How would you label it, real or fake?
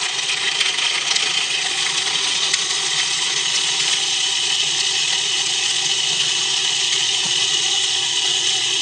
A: fake